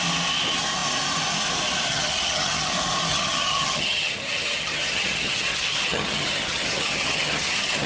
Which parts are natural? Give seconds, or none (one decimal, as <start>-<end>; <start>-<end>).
0.0-1.9; 2.7-3.1